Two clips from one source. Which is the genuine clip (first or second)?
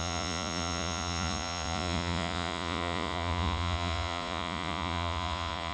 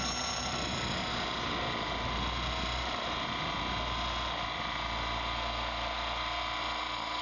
second